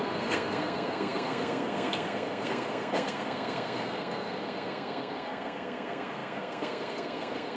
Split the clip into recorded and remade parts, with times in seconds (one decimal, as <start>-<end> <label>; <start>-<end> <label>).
0.0-7.6 remade